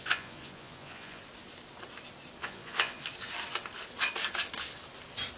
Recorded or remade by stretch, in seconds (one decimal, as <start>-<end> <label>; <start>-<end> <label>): 0.0-1.2 remade; 1.2-2.4 recorded; 2.4-3.0 remade; 3.0-5.4 recorded